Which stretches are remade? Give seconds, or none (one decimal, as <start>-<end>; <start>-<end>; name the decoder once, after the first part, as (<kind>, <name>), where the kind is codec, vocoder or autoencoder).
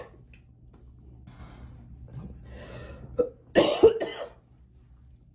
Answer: none